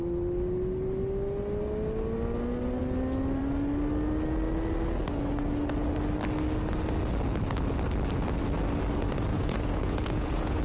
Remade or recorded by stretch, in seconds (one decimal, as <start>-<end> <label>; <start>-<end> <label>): 0.0-9.3 recorded; 9.3-10.6 remade